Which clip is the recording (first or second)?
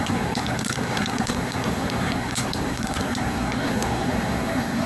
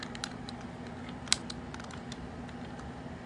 second